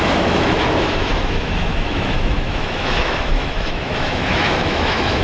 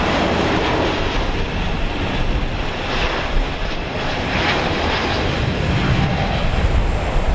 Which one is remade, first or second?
first